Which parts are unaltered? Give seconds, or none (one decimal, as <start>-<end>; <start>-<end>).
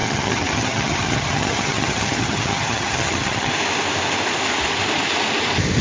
3.5-5.8